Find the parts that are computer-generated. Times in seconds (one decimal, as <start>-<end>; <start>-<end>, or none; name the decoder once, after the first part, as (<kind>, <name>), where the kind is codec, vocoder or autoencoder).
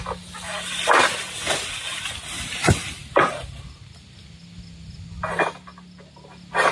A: none